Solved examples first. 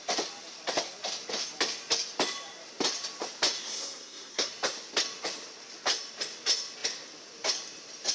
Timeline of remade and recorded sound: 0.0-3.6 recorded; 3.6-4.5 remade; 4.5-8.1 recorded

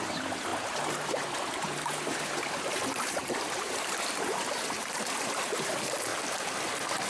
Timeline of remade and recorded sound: 0.0-6.1 remade; 6.1-7.1 recorded

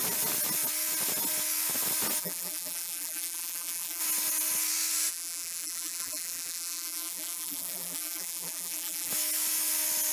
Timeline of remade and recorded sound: 0.0-2.2 recorded; 2.2-4.0 remade; 4.0-5.1 recorded; 5.1-9.1 remade; 9.1-10.1 recorded

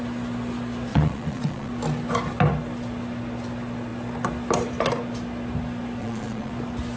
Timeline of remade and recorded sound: 0.0-0.9 recorded; 0.9-1.7 remade; 1.7-6.0 recorded; 6.0-6.5 remade; 6.5-7.0 recorded

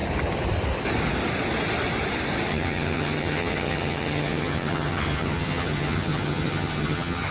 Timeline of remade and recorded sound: 0.0-2.5 recorded; 2.5-7.3 remade

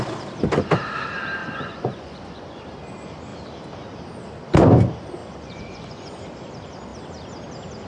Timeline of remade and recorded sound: 0.0-1.4 recorded; 1.4-2.6 remade; 2.6-5.2 recorded; 5.2-6.2 remade; 6.2-7.9 recorded

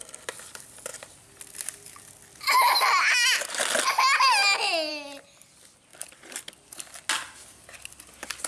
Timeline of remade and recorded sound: 0.0-8.5 recorded

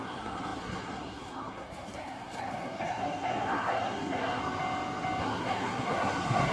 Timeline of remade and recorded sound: 0.0-4.4 remade; 4.4-5.2 recorded; 5.2-6.5 remade